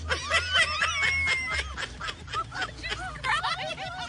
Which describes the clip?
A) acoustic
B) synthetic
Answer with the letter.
A